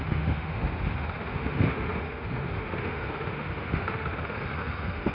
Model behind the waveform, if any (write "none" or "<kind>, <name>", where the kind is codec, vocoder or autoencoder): autoencoder, DAC-VAE